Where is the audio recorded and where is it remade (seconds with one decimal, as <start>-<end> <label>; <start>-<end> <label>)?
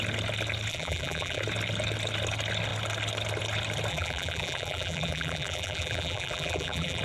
0.0-0.7 recorded; 0.7-1.4 remade; 1.4-3.9 recorded; 3.9-7.0 remade